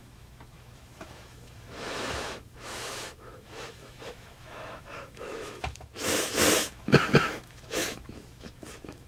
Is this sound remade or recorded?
remade